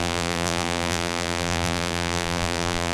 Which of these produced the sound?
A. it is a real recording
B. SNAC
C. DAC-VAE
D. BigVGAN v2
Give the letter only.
D